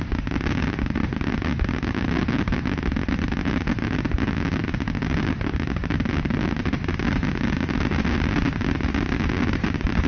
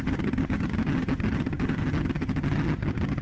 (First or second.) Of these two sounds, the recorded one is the first